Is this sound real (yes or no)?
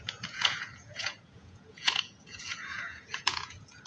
no